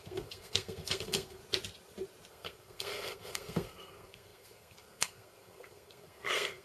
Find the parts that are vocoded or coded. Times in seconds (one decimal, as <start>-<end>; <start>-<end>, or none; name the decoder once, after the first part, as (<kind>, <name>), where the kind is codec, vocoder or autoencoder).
0.0-1.4 (codec, SNAC); 2.3-6.6